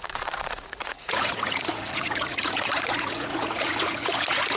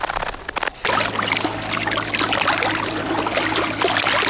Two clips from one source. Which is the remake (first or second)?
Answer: first